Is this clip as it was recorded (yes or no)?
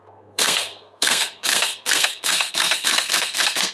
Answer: no